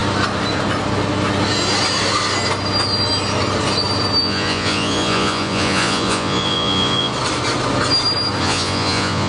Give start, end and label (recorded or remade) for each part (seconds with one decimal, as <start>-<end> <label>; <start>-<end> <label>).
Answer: 0.0-4.2 recorded; 4.2-7.1 remade; 7.1-8.4 recorded; 8.4-9.3 remade